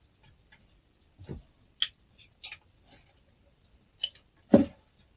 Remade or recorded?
recorded